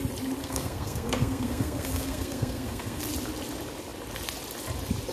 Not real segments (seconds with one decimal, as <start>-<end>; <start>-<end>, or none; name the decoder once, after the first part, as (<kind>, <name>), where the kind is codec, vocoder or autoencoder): 0.4-3.0 (codec, SNAC)